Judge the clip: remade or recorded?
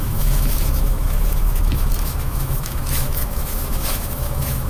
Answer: remade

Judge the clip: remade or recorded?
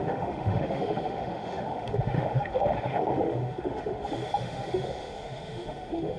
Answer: remade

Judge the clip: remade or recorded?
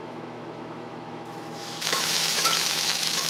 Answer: remade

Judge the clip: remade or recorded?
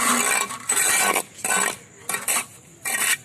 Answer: recorded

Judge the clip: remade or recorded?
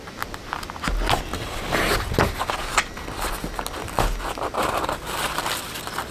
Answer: recorded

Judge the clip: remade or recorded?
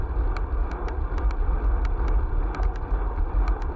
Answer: recorded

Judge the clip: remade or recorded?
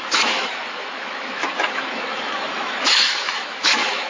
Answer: remade